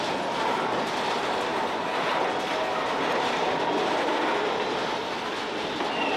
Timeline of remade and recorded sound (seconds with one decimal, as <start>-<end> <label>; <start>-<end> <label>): 0.0-6.2 recorded